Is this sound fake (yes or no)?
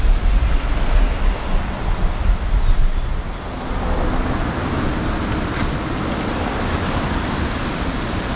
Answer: no